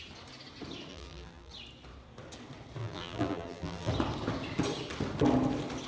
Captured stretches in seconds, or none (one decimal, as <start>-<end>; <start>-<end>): 0.0-0.9; 1.5-2.8; 3.9-5.9